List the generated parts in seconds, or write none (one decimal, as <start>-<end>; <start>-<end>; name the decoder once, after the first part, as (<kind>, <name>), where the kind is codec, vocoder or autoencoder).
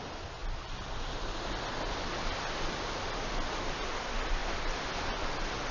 none